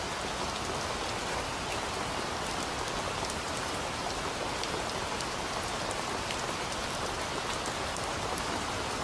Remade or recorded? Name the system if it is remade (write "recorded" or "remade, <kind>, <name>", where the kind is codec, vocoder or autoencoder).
recorded